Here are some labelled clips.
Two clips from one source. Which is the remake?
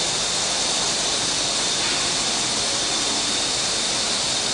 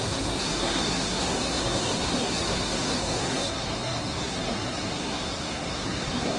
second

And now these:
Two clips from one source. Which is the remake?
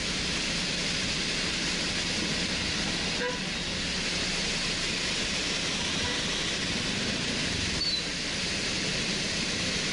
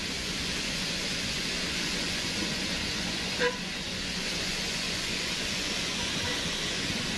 second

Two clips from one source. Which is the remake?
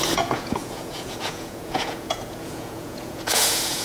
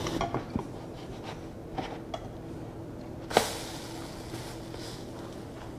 first